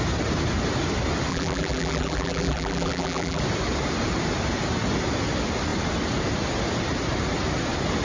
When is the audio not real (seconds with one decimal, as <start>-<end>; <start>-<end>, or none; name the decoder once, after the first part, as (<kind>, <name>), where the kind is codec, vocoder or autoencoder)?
1.3-3.4 (vocoder, BigVGAN v2)